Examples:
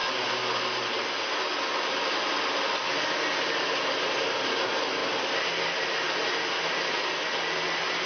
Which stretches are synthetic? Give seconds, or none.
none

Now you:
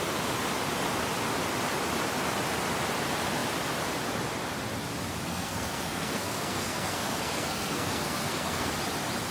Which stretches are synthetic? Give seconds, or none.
5.3-8.7 (codec, SNAC)

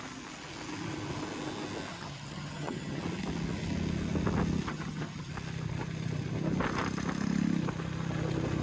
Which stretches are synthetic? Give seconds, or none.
1.9-3.0 (vocoder, HiFi-GAN); 4.7-5.3

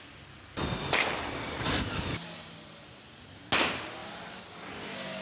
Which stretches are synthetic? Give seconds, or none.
2.2-3.1 (vocoder, BigVGAN v2); 4.0-4.7